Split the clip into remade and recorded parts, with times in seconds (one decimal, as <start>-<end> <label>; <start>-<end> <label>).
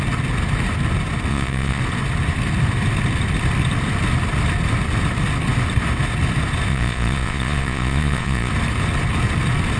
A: 0.0-1.3 recorded; 1.3-1.8 remade; 1.8-6.7 recorded; 6.7-8.5 remade; 8.5-9.8 recorded